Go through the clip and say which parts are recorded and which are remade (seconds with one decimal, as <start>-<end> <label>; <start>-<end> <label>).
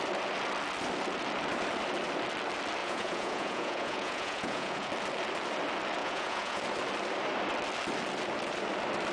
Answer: 0.0-2.8 recorded; 2.8-4.9 remade; 4.9-6.0 recorded; 6.0-6.6 remade; 6.6-9.1 recorded